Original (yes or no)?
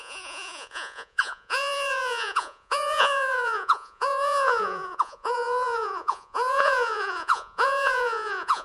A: no